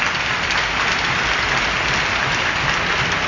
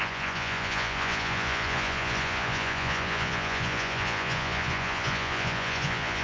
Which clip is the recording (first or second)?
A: first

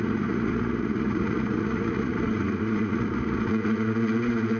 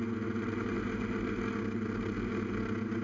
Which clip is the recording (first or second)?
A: second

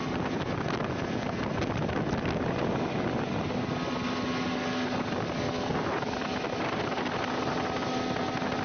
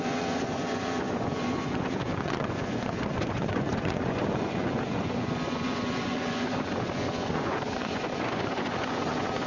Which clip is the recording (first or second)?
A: first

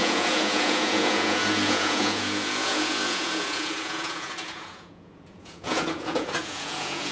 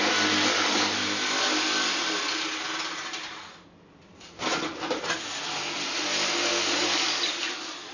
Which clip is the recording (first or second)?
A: second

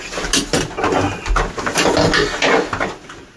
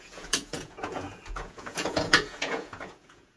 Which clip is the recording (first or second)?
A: first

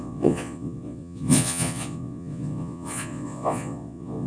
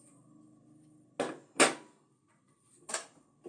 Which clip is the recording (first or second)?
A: second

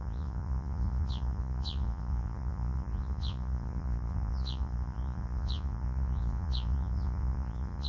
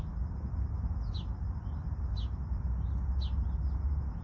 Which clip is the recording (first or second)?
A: second